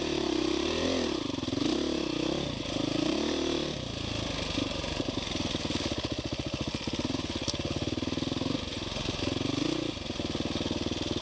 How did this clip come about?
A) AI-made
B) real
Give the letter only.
B